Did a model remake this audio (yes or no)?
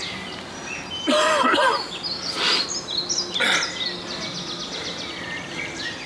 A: no